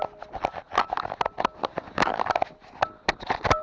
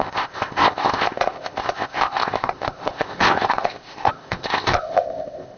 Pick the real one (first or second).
first